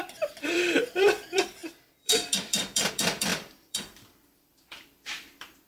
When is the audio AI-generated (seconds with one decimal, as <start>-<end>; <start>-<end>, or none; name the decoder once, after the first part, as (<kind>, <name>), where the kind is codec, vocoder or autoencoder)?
0.0-5.7 (vocoder, BigVGAN v2)